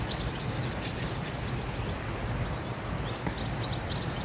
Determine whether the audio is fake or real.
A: real